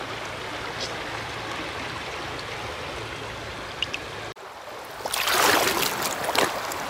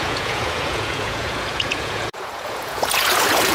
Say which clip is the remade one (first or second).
second